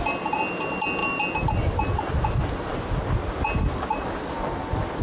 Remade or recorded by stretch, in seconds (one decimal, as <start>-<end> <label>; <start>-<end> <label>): 0.0-5.0 recorded